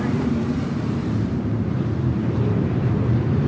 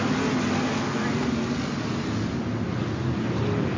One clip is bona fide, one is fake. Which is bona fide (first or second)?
second